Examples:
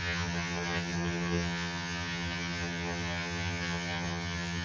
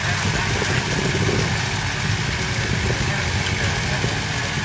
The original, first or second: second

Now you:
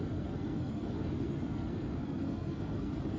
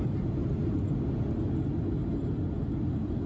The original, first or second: second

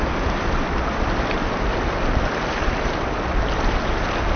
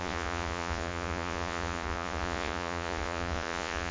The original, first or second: first